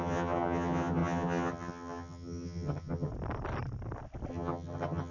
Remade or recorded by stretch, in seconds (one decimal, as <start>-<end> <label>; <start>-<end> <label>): 0.0-3.1 remade; 3.1-4.3 recorded; 4.3-5.1 remade